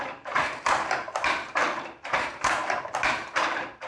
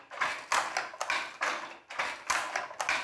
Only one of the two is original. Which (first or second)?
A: second